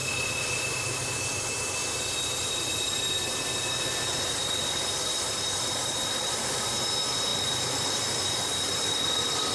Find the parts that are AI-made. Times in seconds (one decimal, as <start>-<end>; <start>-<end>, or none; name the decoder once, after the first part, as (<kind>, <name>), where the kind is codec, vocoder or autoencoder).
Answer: none